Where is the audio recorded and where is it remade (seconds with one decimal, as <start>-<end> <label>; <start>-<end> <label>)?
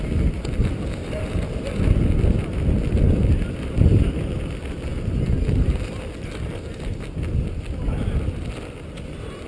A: 0.0-9.5 recorded